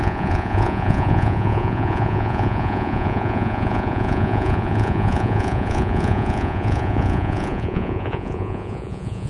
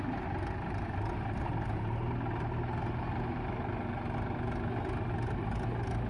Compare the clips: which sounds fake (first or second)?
first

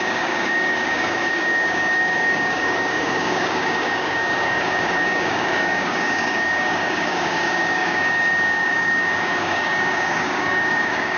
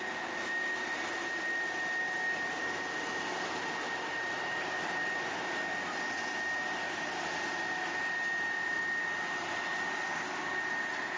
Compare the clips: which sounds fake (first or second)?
first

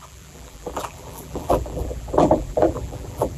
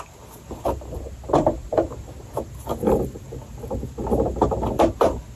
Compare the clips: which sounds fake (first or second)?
first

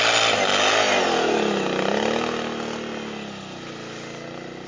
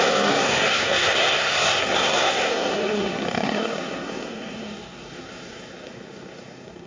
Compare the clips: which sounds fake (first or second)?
second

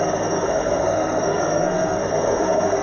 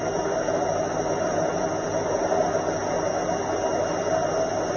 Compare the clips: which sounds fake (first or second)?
first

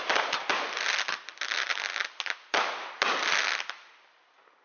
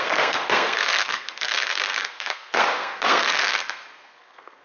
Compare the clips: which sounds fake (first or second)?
second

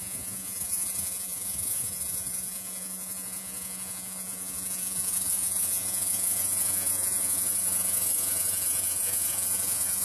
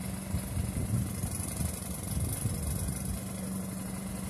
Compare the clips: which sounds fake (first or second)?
first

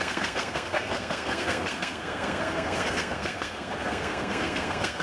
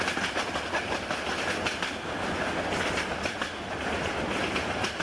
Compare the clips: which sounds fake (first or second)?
first